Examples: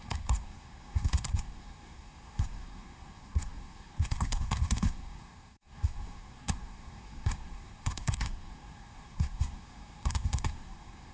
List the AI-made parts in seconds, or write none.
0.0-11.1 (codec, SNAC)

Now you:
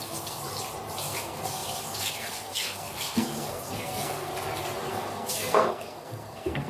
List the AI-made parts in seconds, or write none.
0.0-0.4 (codec, SNAC); 1.0-4.3; 4.9-6.7

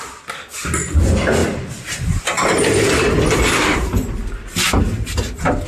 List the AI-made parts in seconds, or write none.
1.4-4.8 (vocoder, BigVGAN v2)

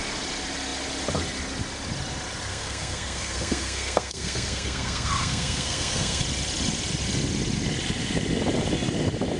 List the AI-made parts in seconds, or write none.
2.5-6.2 (codec, SNAC)

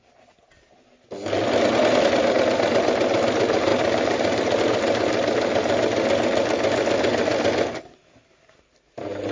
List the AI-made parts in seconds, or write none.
3.7-4.6 (vocoder, BigVGAN v2)